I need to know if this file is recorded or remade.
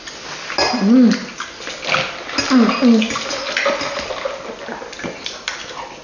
recorded